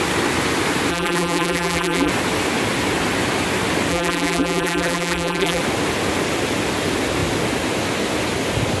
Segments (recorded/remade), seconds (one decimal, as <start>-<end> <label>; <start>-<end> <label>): 0.0-0.9 recorded; 0.9-2.1 remade; 2.1-3.9 recorded; 3.9-5.6 remade; 5.6-8.8 recorded

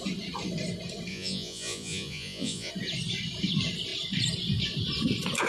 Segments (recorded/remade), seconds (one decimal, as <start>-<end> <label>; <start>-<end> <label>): 0.0-1.1 recorded; 1.1-2.7 remade; 2.7-5.5 recorded

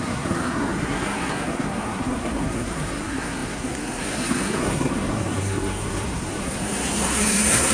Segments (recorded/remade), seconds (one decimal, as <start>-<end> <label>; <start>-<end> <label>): 0.0-7.7 remade

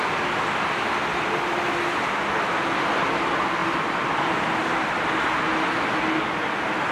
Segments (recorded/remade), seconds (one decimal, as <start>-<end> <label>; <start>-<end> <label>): 0.0-6.9 recorded